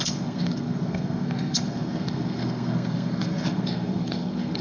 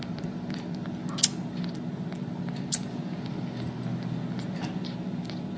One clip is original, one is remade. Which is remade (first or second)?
first